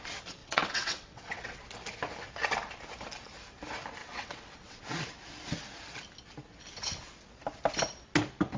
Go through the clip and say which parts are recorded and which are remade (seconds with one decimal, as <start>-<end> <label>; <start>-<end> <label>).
0.0-0.4 recorded; 0.4-1.6 remade; 1.6-4.0 recorded; 4.0-4.8 remade; 4.8-8.6 recorded